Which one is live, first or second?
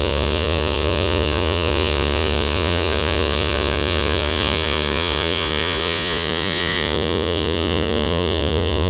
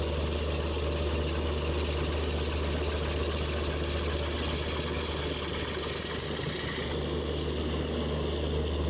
second